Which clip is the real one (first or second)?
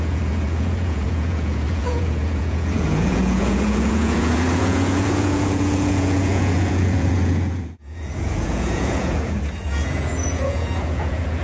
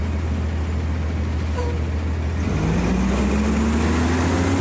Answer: second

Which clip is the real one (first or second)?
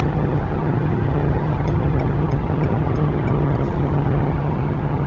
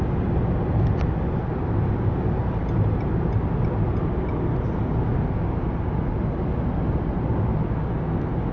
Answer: second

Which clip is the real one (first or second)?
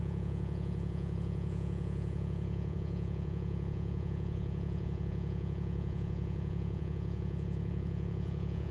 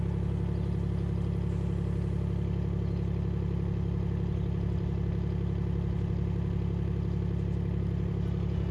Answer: second